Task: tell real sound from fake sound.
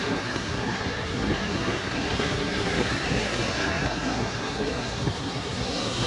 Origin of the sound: fake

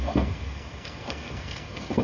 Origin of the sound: fake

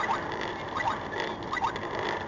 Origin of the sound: real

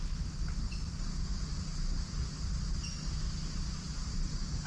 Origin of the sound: real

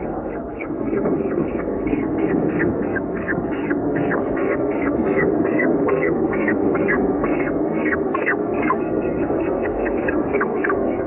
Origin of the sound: fake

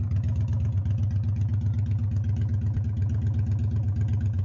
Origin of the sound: real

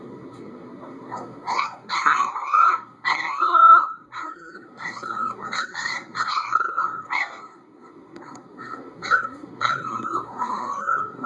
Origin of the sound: fake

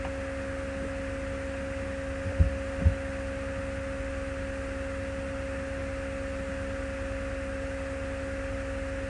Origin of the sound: real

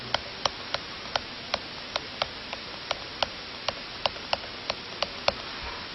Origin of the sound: real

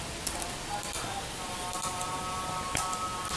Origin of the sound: real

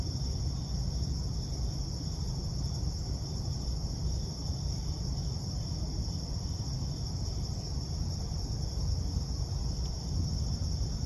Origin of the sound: real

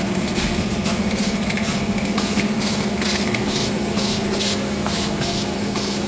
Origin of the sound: fake